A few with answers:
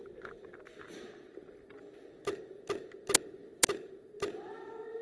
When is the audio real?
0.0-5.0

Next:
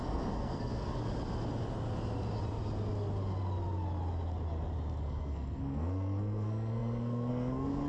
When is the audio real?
1.0-5.0

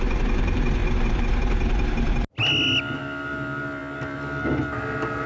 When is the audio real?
0.0-5.3

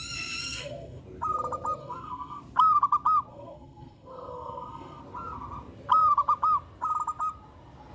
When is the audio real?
0.0-0.4; 1.0-1.8; 2.4-3.3; 5.0-7.9

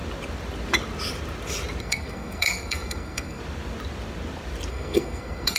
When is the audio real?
0.0-1.8; 3.4-4.7

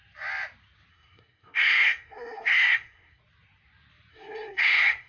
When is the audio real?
0.0-0.9; 3.2-4.1

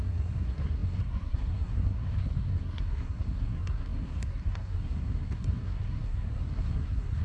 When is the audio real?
none

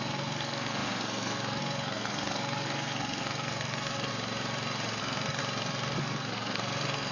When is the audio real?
4.1-5.0; 5.4-6.0